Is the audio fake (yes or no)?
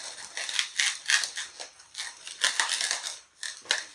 no